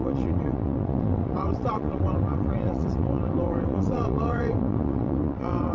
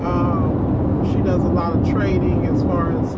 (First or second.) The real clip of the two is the second